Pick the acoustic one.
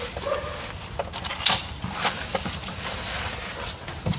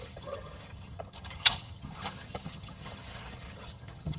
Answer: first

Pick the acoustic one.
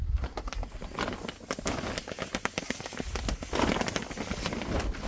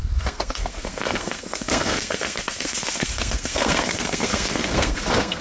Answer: first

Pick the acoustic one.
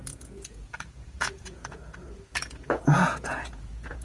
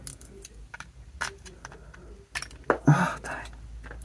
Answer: second